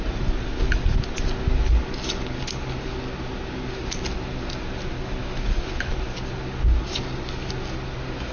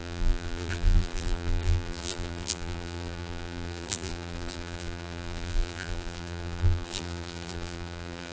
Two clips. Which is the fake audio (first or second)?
second